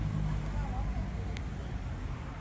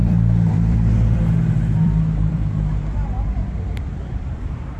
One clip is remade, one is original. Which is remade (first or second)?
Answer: second